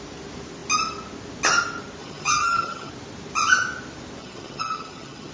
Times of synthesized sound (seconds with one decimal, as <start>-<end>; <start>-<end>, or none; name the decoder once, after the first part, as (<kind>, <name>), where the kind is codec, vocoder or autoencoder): 2.0-2.9 (vocoder, HiFi-GAN); 4.2-5.3